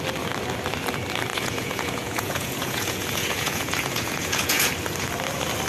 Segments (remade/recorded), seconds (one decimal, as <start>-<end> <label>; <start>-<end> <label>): 0.0-1.3 recorded; 1.3-4.7 remade; 4.7-5.7 recorded